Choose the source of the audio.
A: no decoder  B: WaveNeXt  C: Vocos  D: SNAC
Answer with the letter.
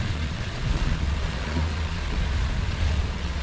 C